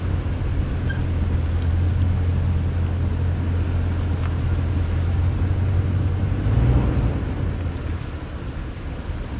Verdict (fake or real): real